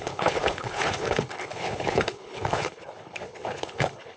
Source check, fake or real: fake